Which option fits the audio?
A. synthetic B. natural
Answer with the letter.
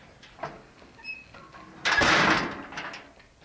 B